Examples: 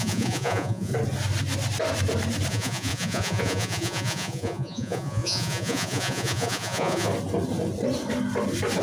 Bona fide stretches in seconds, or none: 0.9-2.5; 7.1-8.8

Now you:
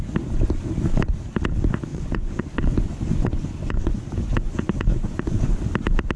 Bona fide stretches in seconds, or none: 0.0-1.9; 5.5-6.2